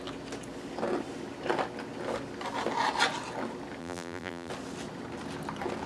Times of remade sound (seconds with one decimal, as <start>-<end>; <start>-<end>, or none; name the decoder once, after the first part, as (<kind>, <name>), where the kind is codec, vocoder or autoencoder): 3.8-4.5 (vocoder, BigVGAN v2)